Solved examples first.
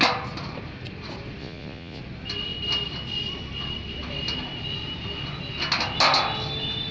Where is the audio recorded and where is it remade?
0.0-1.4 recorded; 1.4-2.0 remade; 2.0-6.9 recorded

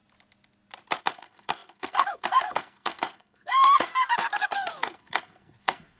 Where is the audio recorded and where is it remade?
0.0-1.0 recorded; 1.0-6.0 remade

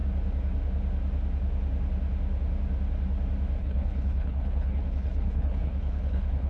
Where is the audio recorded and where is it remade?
0.0-3.6 recorded; 3.6-6.5 remade

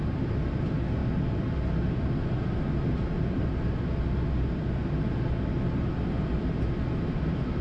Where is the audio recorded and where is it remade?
0.0-7.6 recorded

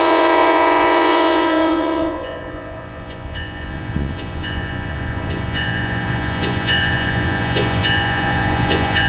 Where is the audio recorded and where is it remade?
0.0-9.1 remade

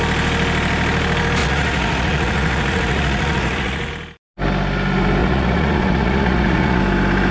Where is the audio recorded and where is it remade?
0.0-1.4 recorded; 1.4-3.9 remade; 3.9-5.2 recorded; 5.2-6.8 remade; 6.8-7.3 recorded